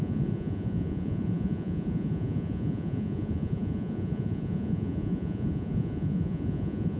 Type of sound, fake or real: fake